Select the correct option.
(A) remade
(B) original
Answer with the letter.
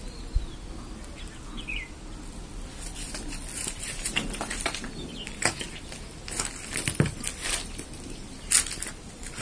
B